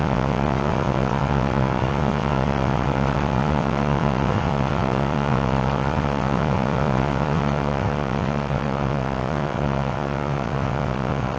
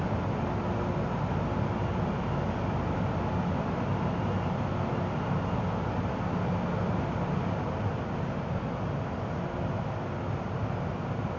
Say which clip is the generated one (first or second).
first